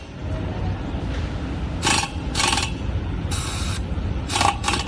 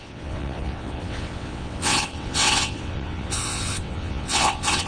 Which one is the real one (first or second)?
first